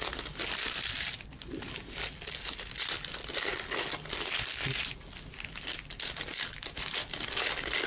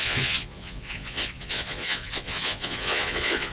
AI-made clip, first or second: second